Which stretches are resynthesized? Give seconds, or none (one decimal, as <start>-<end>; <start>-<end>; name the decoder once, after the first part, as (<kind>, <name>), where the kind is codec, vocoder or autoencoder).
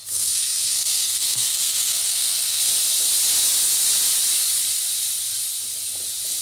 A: 0.0-2.6 (codec, SNAC)